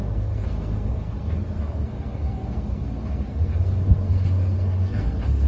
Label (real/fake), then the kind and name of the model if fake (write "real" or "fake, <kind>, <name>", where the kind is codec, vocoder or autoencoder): fake, codec, SNAC